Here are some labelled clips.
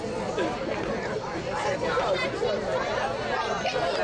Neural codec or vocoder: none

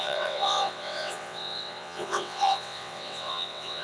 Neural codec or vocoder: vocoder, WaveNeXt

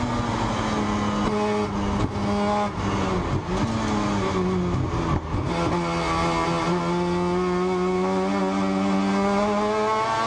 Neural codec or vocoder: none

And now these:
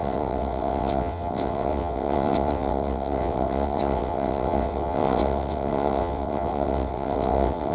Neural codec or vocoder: vocoder, WaveNeXt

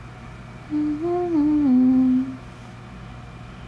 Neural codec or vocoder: none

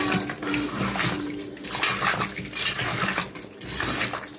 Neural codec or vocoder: none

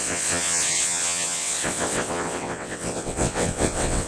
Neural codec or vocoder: vocoder, WaveNeXt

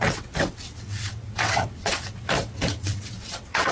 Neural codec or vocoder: vocoder, WaveNeXt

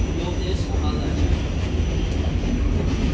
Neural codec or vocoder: none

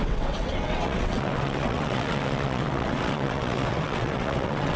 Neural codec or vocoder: vocoder, WaveNeXt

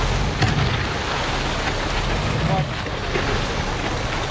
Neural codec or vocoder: none